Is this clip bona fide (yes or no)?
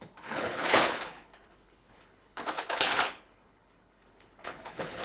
no